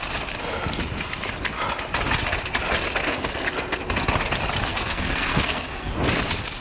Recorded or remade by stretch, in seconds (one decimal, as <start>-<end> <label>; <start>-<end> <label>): 0.0-4.7 recorded; 4.7-5.9 remade; 5.9-6.6 recorded